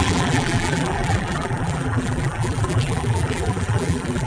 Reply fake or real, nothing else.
fake